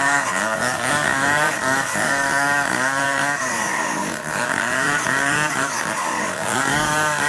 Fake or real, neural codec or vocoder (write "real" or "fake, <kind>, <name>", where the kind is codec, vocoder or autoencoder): fake, codec, DAC